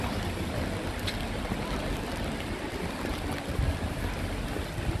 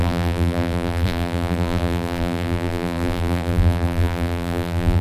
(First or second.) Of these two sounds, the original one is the first